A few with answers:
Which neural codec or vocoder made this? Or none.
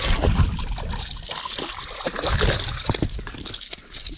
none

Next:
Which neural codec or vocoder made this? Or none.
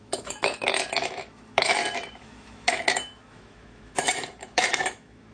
autoencoder, DAC-VAE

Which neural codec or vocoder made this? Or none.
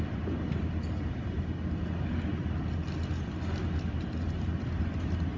none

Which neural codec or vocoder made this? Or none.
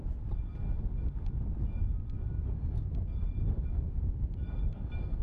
none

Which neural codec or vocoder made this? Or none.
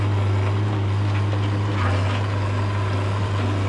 none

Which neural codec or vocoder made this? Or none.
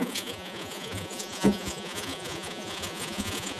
vocoder, Vocos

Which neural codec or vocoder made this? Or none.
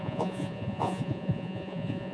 vocoder, Vocos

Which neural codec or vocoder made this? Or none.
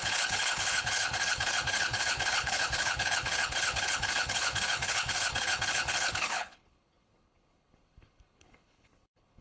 codec, HILCodec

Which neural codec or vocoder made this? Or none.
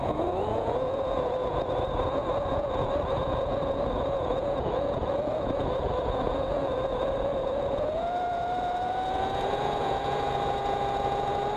vocoder, Vocos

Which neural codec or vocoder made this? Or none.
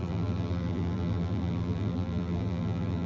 vocoder, BigVGAN v2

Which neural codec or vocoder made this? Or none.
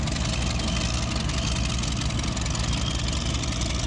none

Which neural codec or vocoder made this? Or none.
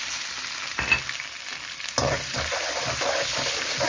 none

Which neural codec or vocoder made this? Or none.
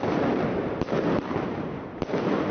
none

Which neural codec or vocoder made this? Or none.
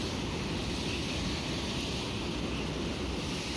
none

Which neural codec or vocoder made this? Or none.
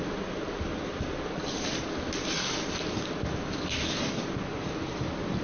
none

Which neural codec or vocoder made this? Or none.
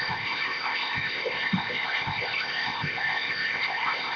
codec, ZipCodec